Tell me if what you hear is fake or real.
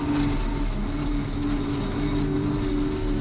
real